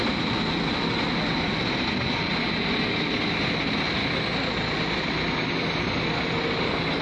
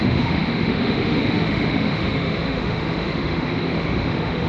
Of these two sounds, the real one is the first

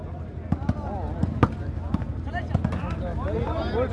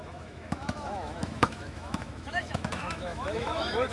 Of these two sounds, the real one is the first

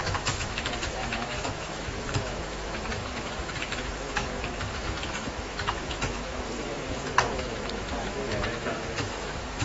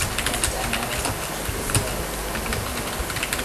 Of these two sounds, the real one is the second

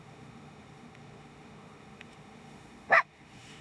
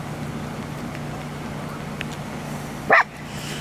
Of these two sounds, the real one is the second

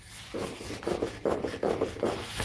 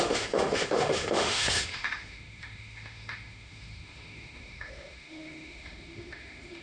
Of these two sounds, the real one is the first